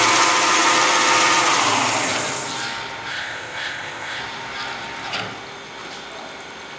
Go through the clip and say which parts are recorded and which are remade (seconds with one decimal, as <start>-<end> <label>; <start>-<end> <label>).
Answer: 0.0-3.1 recorded; 3.1-4.2 remade; 4.2-6.8 recorded